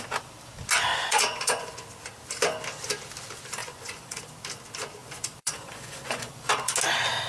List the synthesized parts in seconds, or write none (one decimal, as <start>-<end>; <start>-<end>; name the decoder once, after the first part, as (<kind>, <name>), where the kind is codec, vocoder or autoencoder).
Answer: 0.9-1.7 (vocoder, Vocos); 3.6-4.2; 5.0-6.5